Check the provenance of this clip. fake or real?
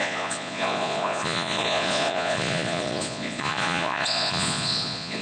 fake